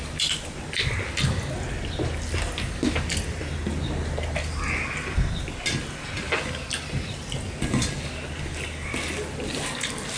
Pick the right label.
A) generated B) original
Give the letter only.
B